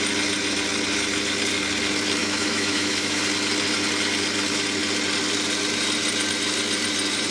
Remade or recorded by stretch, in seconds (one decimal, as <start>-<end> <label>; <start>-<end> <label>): 0.0-2.2 recorded; 2.2-3.2 remade; 3.2-7.3 recorded